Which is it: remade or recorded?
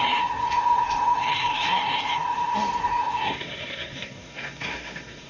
remade